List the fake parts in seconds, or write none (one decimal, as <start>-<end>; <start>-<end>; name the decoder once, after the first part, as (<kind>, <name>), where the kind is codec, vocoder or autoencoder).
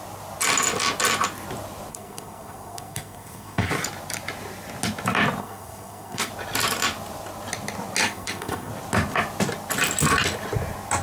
1.9-3.7 (codec, SNAC); 5.4-6.3; 8.0-8.7